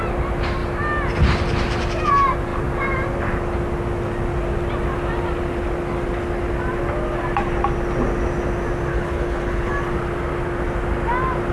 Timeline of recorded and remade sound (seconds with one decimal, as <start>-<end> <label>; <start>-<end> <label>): 0.0-8.9 recorded; 8.9-9.7 remade; 9.7-11.5 recorded